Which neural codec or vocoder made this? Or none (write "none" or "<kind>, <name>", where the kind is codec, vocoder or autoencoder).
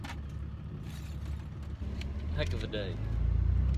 none